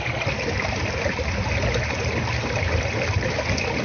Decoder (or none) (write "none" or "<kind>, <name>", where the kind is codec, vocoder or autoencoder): none